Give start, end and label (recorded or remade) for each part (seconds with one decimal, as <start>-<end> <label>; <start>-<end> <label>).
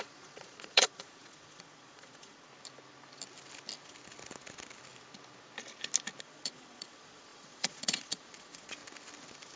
0.0-2.5 remade; 2.5-6.2 recorded; 6.2-8.8 remade; 8.8-9.6 recorded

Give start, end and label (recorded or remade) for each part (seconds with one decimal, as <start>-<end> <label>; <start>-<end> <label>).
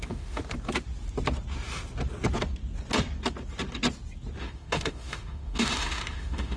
0.0-0.4 remade; 0.4-4.4 recorded; 4.4-6.6 remade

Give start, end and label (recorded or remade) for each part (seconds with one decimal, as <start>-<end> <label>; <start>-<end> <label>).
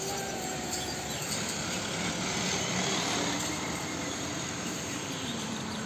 0.0-1.2 remade; 1.2-3.4 recorded; 3.4-5.9 remade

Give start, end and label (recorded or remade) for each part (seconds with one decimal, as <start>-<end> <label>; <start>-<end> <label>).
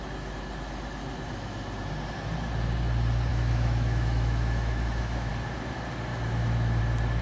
0.0-3.3 recorded; 3.3-5.3 remade; 5.3-6.1 recorded; 6.1-6.8 remade; 6.8-7.2 recorded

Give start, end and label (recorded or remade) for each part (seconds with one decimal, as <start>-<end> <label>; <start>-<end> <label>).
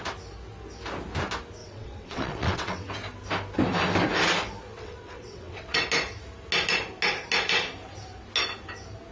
0.0-1.6 recorded; 1.6-2.9 remade; 2.9-4.7 recorded; 4.7-5.8 remade; 5.8-9.1 recorded